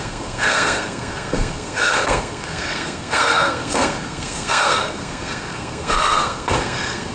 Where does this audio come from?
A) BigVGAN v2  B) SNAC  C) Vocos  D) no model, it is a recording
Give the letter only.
B